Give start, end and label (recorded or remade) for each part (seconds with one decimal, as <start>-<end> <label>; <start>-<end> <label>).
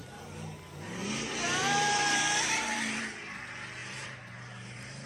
0.0-1.6 recorded; 1.6-3.0 remade; 3.0-3.8 recorded; 3.8-5.1 remade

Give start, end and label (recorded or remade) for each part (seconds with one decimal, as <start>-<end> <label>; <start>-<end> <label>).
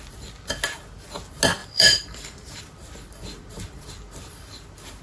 0.0-1.6 recorded; 1.6-2.6 remade; 2.6-5.0 recorded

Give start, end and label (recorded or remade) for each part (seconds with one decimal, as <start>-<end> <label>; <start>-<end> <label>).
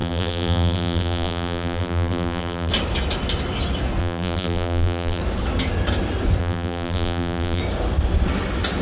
0.0-2.7 remade; 2.7-4.0 recorded; 4.0-5.2 remade; 5.2-6.4 recorded; 6.4-7.6 remade; 7.6-8.8 recorded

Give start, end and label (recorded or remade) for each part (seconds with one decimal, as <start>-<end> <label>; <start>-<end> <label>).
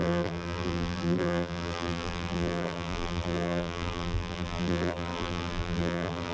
0.0-6.3 remade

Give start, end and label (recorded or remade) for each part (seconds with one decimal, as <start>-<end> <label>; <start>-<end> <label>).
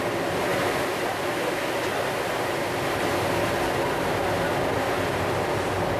0.0-6.0 recorded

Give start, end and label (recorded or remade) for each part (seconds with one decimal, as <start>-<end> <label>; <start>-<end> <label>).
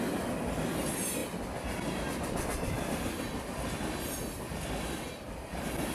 0.0-5.9 recorded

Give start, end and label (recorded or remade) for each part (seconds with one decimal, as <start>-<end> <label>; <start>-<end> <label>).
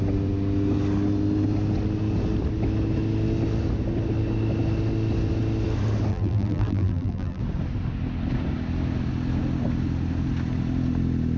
0.0-6.1 recorded; 6.1-7.4 remade; 7.4-11.4 recorded